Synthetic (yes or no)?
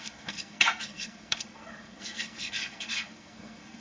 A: yes